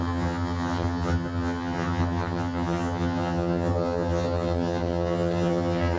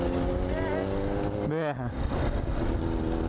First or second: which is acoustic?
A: second